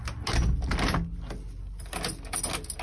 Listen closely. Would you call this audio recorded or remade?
recorded